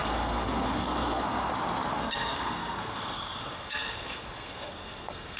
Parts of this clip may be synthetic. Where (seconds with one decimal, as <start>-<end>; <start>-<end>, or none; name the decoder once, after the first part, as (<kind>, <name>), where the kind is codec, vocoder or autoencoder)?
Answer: 0.0-1.5 (codec, SNAC); 1.9-5.4